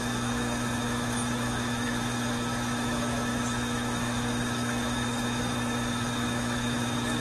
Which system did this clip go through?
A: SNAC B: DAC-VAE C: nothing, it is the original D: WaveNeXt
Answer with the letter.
B